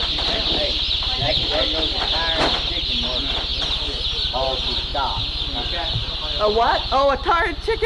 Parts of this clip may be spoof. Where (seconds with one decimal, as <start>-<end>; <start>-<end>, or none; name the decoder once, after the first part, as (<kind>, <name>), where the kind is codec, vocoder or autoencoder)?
0.0-1.3 (vocoder, BigVGAN v2)